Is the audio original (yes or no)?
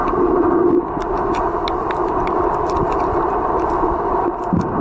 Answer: no